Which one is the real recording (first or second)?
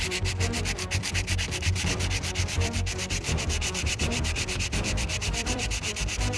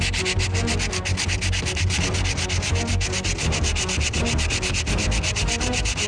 second